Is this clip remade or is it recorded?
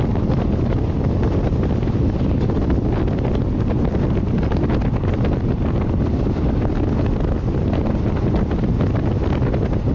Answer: recorded